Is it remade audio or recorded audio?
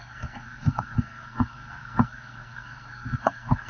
remade